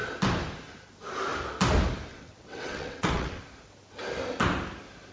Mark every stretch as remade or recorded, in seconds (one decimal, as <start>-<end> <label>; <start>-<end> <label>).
0.0-2.1 recorded; 2.1-3.4 remade; 3.4-5.1 recorded